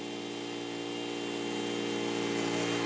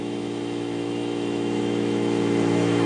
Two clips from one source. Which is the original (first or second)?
first